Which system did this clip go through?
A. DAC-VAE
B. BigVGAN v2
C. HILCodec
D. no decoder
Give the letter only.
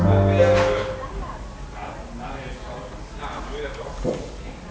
D